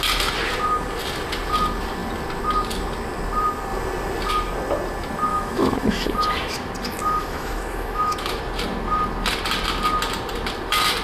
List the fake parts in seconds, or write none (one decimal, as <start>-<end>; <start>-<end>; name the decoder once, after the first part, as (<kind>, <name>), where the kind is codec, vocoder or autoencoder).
5.3-6.7 (autoencoder, DAC-VAE); 7.2-8.4